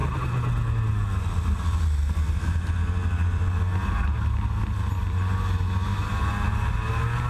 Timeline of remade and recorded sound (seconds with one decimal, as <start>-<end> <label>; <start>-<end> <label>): 0.0-7.3 recorded